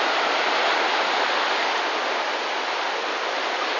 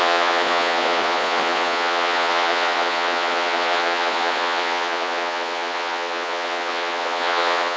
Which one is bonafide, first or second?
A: first